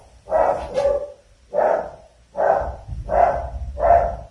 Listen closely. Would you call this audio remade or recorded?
recorded